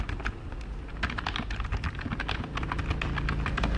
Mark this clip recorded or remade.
recorded